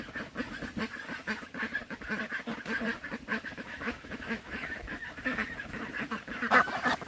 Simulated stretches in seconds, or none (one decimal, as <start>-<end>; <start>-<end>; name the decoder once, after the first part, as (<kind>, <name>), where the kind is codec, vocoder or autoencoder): 3.3-5.0 (autoencoder, DAC-VAE)